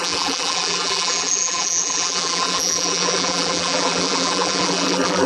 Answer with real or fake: fake